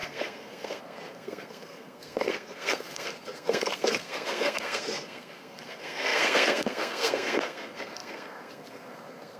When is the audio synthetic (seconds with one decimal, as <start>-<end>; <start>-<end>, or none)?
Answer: 0.0-9.4